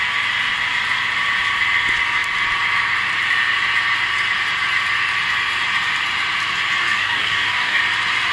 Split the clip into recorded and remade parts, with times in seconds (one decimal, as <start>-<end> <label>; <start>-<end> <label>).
0.0-6.8 recorded; 6.8-7.8 remade; 7.8-8.3 recorded